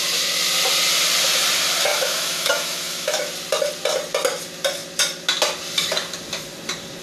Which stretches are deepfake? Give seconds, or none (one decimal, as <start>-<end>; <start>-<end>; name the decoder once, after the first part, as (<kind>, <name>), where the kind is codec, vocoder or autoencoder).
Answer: 1.9-3.2 (autoencoder, DAC-VAE)